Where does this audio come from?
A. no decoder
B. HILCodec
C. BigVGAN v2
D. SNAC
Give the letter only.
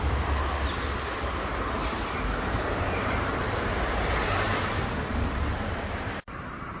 C